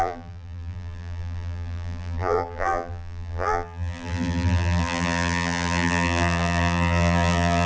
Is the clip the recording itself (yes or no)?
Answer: no